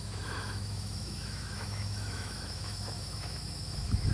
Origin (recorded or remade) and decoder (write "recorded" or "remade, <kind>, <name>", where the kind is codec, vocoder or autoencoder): remade, autoencoder, DAC-VAE